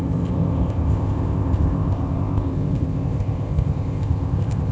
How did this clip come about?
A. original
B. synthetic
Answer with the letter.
B